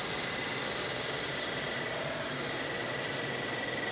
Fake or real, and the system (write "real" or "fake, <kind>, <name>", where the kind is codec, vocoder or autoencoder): fake, vocoder, BigVGAN v2